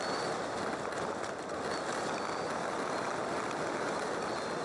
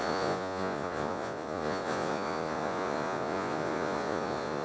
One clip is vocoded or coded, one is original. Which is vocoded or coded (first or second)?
second